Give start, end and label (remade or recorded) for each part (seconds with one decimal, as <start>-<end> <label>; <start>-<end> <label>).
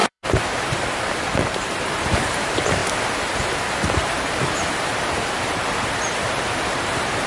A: 0.0-2.8 remade; 2.8-3.4 recorded; 3.4-7.3 remade